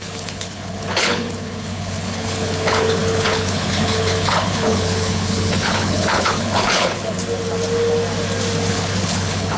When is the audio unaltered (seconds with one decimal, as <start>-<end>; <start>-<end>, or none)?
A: 7.2-8.7